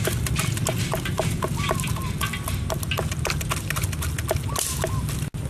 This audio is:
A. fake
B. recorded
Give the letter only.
B